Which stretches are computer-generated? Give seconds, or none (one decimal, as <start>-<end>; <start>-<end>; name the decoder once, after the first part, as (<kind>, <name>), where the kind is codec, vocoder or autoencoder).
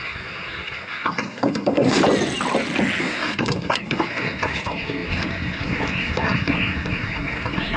0.0-2.0 (codec, SNAC); 3.0-7.8